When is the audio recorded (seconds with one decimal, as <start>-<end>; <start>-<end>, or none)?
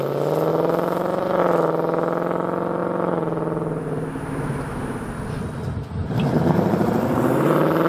0.0-0.5; 1.4-2.8; 5.1-6.0; 7.5-7.9